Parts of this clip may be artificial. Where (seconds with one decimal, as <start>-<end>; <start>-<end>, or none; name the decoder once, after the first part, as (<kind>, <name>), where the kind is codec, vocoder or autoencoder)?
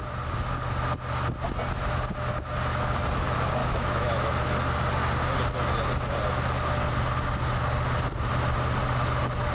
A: 3.6-4.3 (autoencoder, DAC-VAE)